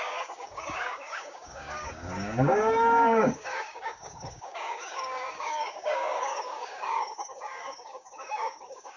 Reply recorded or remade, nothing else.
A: remade